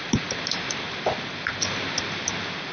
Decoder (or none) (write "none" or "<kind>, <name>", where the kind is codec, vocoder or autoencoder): none